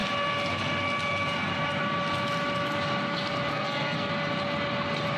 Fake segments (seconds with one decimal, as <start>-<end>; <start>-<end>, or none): 3.5-4.1